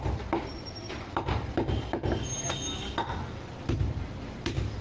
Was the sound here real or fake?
real